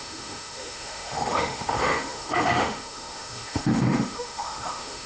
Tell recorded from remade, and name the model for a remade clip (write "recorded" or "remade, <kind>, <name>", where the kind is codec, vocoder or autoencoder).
remade, autoencoder, DAC-VAE